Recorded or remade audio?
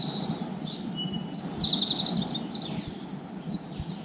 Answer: recorded